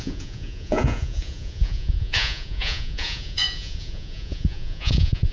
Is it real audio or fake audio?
fake